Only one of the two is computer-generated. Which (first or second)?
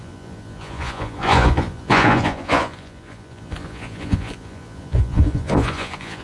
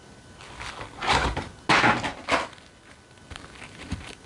first